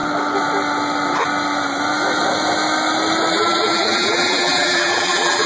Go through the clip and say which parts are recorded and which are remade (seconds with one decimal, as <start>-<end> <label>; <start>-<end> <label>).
0.0-3.3 recorded; 3.3-5.5 remade